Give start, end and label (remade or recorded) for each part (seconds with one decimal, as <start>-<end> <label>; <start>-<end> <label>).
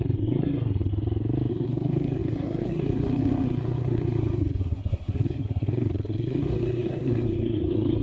0.0-0.9 remade; 0.9-1.5 recorded; 1.5-8.0 remade